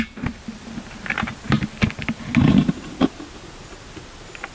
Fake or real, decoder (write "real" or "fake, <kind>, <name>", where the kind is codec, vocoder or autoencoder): real